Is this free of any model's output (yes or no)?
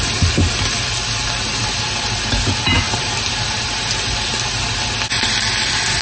yes